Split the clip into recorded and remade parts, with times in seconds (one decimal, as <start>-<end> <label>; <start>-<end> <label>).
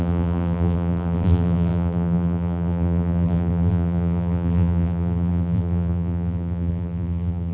0.0-7.5 remade